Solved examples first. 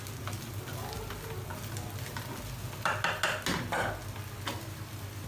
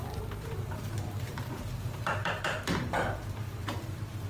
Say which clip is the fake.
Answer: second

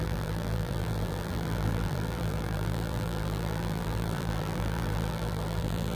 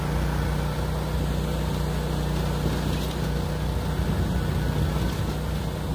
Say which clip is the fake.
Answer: first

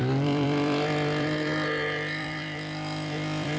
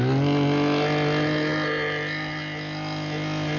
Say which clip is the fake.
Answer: first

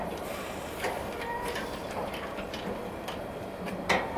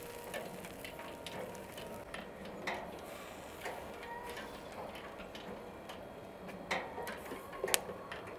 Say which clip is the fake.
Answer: first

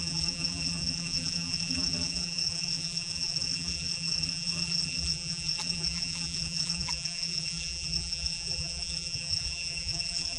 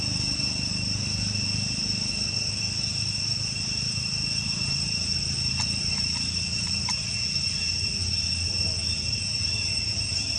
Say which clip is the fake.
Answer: first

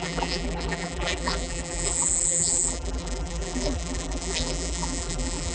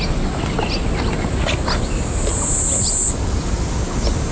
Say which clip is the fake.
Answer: first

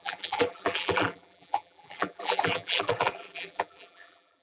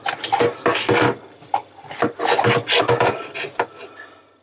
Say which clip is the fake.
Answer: first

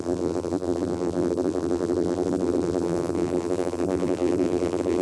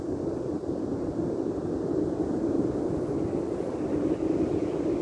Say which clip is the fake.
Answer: first